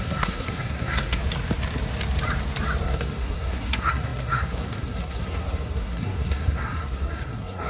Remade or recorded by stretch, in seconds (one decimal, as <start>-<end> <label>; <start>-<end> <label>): 0.0-1.2 remade; 1.2-2.8 recorded; 2.8-7.7 remade

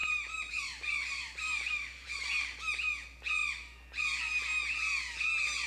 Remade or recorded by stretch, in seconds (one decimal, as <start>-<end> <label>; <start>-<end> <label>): 0.0-2.4 remade; 2.4-5.7 recorded

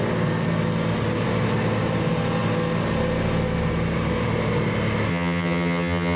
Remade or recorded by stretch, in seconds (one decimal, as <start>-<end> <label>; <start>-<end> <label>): 0.0-5.1 recorded; 5.1-6.2 remade